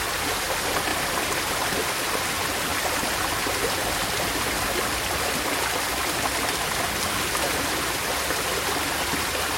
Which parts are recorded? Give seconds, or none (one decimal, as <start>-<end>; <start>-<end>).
0.0-9.6